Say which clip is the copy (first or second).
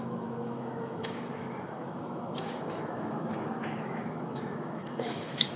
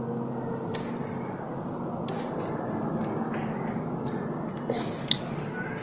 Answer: first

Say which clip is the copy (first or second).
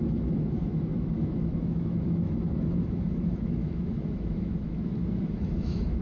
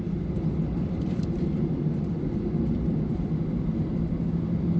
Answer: first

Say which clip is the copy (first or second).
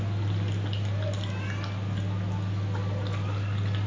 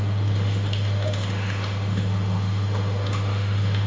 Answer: second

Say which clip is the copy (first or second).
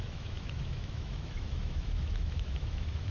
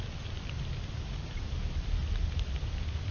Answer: first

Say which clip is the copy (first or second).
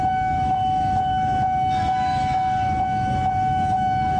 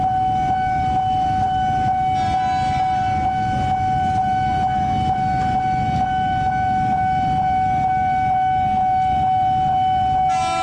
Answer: first